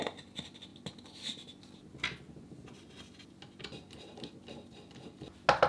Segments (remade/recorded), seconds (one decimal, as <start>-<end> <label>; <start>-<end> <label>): 0.0-5.7 recorded